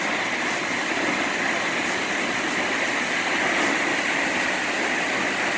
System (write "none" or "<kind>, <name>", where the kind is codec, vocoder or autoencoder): none